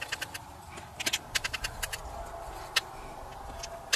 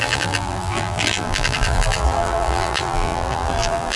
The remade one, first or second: second